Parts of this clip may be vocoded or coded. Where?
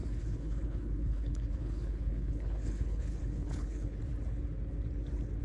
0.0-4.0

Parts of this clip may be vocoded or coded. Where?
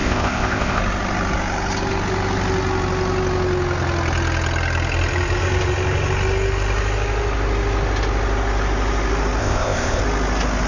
0.0-0.8; 9.4-10.0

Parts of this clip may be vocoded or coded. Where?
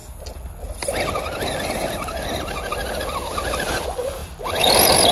none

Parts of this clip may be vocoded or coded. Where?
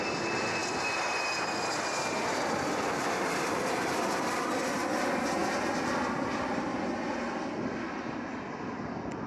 none